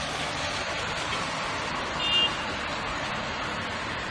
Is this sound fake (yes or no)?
no